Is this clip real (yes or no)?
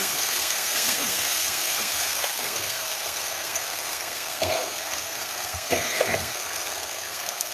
no